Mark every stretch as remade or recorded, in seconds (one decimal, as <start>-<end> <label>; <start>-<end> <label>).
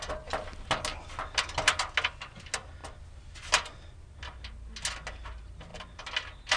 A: 0.0-6.6 recorded